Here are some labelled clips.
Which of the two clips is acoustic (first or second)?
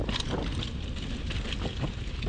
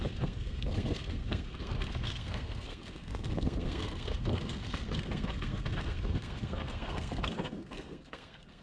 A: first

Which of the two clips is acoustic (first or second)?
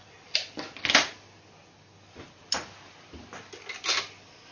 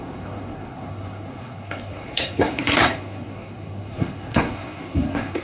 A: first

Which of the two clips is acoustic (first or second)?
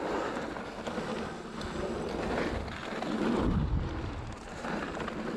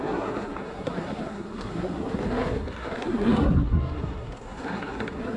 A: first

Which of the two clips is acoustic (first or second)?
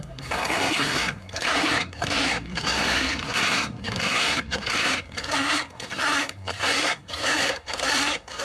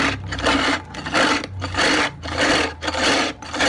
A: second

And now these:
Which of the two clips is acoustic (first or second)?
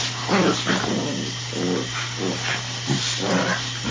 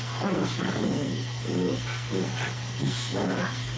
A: first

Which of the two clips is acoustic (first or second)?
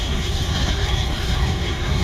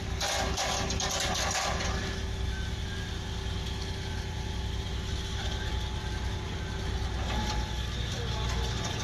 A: second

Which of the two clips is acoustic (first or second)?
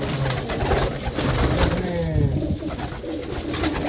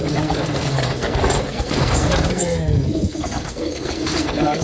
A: first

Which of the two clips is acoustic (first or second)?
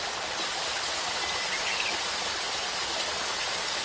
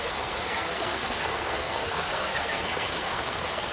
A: first